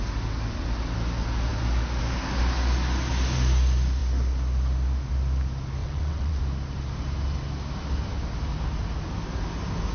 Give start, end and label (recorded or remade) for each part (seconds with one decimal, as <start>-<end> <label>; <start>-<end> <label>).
0.0-5.8 recorded; 5.8-6.4 remade; 6.4-9.9 recorded